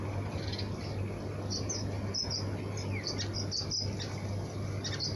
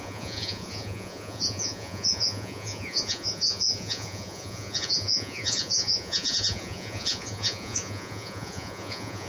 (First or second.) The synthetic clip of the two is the second